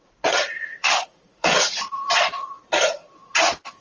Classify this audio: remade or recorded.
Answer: remade